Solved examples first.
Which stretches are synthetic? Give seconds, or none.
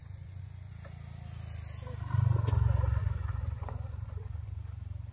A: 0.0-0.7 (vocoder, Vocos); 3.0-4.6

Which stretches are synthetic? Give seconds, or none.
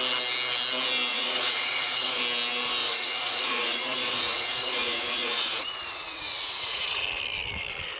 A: 1.1-2.2 (vocoder, Vocos); 2.8-7.0